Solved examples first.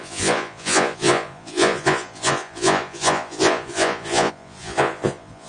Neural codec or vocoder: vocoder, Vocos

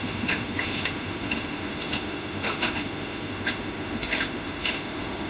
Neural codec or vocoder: autoencoder, DAC-VAE